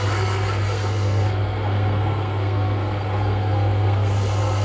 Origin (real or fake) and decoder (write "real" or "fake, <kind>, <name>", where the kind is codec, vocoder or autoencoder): fake, codec, SNAC